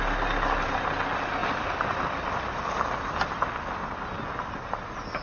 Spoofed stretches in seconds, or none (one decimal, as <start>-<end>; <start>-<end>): none